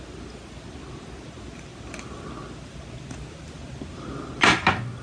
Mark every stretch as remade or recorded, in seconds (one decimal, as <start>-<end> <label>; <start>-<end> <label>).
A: 0.0-5.0 recorded